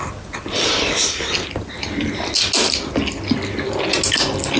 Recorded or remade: recorded